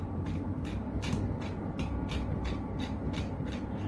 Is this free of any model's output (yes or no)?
yes